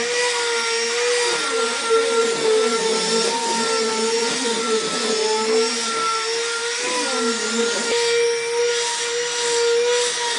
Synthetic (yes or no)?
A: no